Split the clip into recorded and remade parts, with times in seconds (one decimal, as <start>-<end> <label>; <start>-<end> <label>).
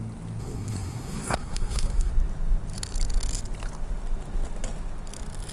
0.0-0.4 recorded; 0.4-2.1 remade; 2.1-5.5 recorded